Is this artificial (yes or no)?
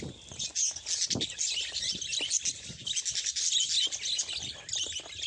no